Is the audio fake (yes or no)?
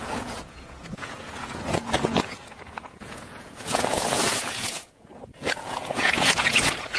yes